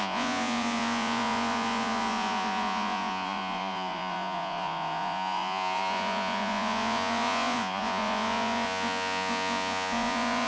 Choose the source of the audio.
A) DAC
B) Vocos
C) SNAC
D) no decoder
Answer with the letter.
B